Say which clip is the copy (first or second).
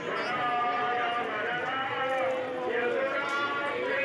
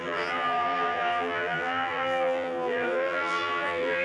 second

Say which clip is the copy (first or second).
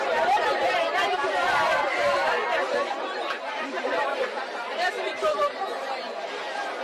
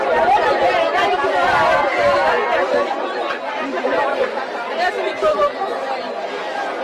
first